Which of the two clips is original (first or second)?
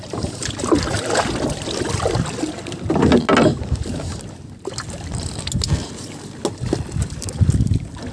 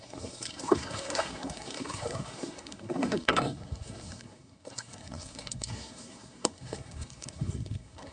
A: first